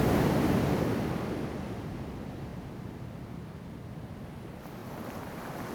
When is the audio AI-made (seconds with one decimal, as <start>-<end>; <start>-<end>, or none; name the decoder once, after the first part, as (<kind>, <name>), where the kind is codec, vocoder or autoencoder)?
2.5-3.2 (vocoder, BigVGAN v2); 4.8-5.7